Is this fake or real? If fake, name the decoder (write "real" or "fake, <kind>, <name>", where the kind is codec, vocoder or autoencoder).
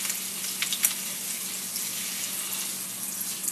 real